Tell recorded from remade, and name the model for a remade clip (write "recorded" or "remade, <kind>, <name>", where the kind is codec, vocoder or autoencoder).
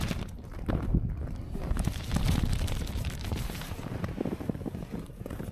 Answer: remade, vocoder, BigVGAN v2